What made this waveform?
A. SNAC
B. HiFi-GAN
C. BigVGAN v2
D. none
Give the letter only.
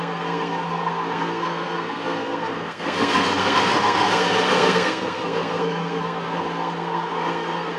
A